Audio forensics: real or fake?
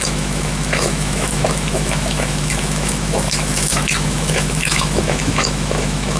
fake